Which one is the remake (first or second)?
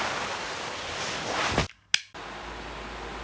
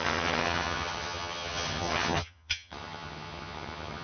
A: second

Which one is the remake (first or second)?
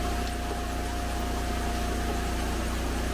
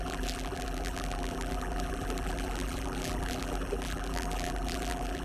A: second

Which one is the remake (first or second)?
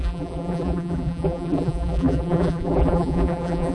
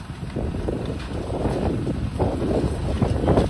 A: first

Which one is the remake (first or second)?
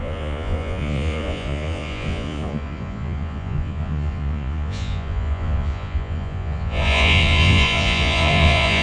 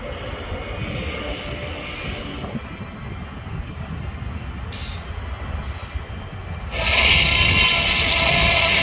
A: first